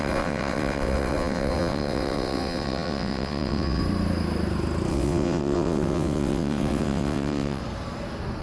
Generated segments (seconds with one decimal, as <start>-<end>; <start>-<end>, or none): 0.0-3.8; 4.9-7.6